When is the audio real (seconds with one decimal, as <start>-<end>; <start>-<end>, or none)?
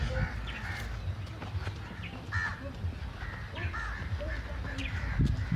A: 0.0-5.6